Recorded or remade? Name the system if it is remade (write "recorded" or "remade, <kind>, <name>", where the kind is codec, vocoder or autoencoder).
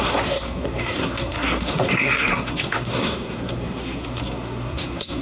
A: remade, codec, SNAC